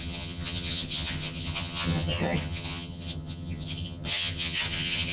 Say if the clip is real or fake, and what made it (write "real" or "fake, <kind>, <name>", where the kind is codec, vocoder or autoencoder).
fake, vocoder, HiFi-GAN